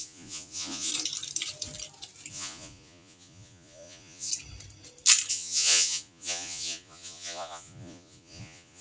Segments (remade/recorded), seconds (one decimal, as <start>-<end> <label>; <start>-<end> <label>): 0.0-0.9 remade; 0.9-2.3 recorded; 2.3-4.3 remade; 4.3-5.3 recorded; 5.3-8.8 remade

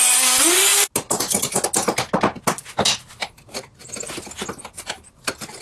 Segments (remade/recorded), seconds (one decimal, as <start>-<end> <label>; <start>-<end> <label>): 0.0-5.6 recorded